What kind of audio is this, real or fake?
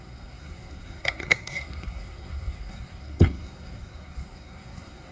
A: fake